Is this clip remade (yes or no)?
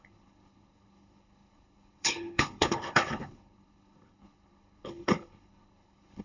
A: yes